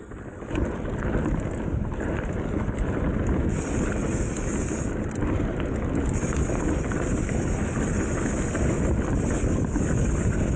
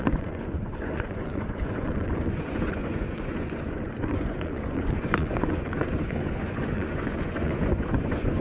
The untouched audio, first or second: first